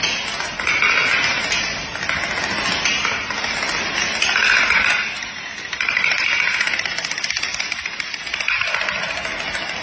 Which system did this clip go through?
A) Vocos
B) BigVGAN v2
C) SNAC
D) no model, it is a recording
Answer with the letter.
D